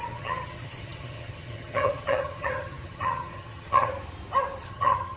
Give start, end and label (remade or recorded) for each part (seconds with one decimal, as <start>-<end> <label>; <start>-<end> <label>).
0.0-3.9 remade; 3.9-4.6 recorded; 4.6-5.2 remade